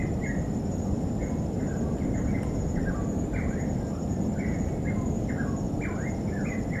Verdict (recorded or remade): recorded